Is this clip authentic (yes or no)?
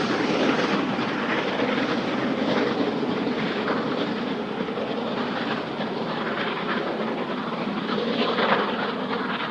yes